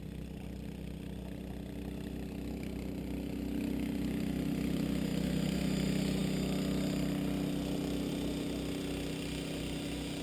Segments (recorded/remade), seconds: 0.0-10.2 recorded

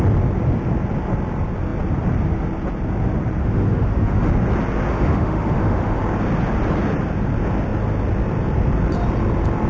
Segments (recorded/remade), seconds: 0.0-3.4 recorded; 3.4-4.3 remade; 4.3-4.9 recorded; 4.9-6.0 remade; 6.0-9.7 recorded

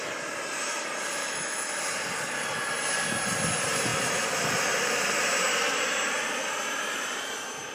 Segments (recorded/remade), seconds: 0.0-1.2 recorded; 1.2-1.8 remade; 1.8-7.7 recorded